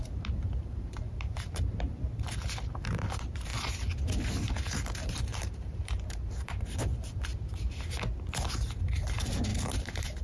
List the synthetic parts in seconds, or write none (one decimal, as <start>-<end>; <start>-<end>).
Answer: 0.0-3.5; 4.5-7.3; 8.8-10.2